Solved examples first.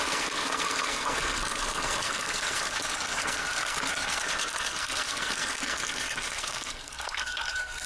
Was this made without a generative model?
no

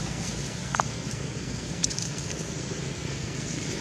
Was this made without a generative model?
no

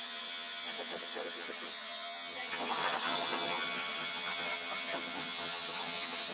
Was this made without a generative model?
no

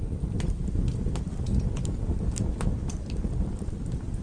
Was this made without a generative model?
yes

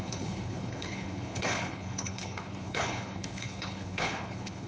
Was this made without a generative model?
no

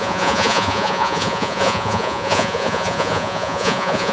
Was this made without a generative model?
no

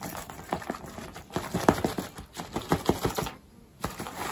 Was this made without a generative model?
no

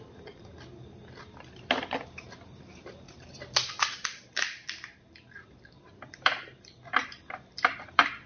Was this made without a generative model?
no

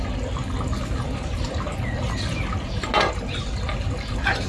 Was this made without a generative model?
yes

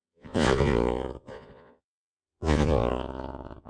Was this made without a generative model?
no